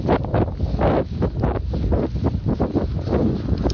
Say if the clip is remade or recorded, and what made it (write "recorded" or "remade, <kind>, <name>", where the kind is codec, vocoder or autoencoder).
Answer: recorded